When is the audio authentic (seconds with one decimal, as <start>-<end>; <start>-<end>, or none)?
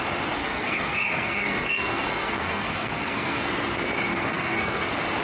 0.0-0.4; 3.5-4.1; 4.8-5.2